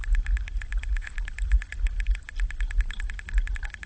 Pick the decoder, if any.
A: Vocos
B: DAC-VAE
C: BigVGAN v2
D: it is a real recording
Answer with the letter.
D